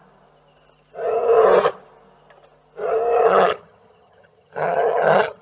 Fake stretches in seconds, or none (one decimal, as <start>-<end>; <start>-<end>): 3.2-5.4